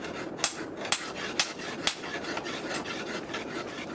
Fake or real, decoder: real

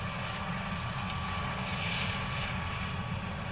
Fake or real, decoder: real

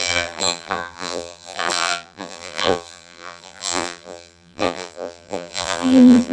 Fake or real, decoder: fake, vocoder, BigVGAN v2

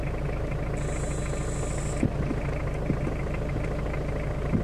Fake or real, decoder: real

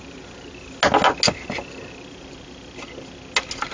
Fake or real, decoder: real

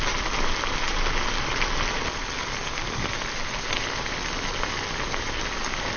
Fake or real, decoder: real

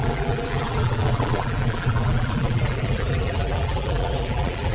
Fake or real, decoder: fake, vocoder, BigVGAN v2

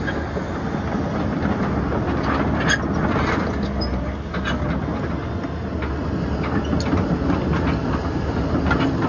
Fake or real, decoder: real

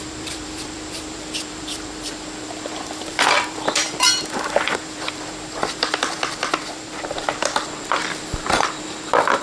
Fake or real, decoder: fake, vocoder, BigVGAN v2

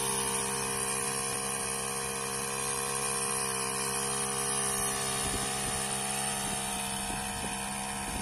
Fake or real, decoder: real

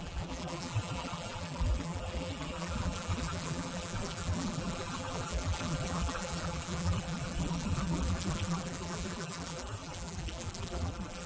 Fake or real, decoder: fake, vocoder, BigVGAN v2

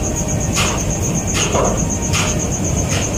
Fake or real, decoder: fake, vocoder, BigVGAN v2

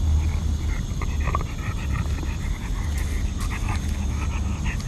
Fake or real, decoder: real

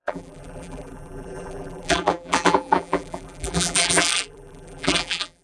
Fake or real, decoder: fake, vocoder, BigVGAN v2